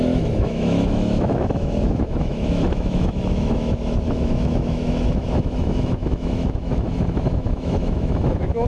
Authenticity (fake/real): fake